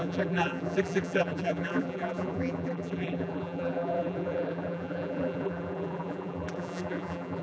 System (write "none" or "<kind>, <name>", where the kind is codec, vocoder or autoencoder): vocoder, BigVGAN v2